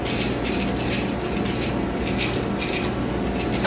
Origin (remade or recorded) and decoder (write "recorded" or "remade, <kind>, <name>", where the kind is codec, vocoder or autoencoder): recorded